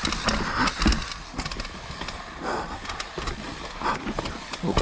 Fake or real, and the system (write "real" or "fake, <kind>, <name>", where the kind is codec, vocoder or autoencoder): real